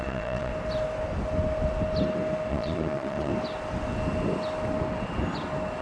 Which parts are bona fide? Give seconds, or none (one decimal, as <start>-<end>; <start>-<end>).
0.5-2.5; 3.3-5.8